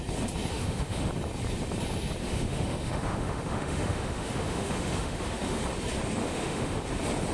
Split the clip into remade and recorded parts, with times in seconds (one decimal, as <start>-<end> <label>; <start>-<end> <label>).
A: 0.0-0.5 recorded; 0.5-1.1 remade; 1.1-2.2 recorded; 2.2-5.6 remade; 5.6-6.2 recorded; 6.2-6.8 remade; 6.8-7.3 recorded